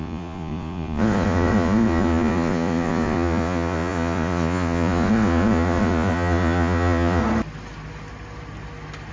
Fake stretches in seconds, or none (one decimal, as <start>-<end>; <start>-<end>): 0.0-7.2